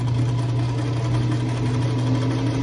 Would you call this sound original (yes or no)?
yes